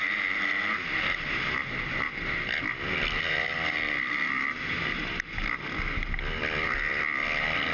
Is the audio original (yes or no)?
yes